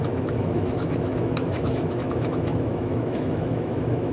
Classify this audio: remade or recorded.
remade